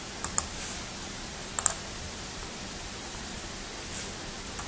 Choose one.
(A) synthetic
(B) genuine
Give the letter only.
B